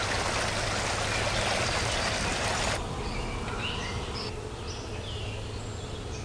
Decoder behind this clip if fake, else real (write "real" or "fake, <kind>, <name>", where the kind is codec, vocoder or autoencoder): real